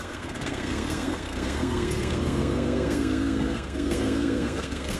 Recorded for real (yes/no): no